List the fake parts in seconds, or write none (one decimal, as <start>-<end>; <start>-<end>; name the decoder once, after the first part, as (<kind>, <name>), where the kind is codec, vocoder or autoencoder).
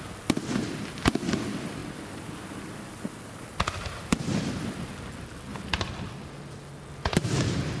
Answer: 1.8-5.0 (vocoder, BigVGAN v2); 5.5-6.0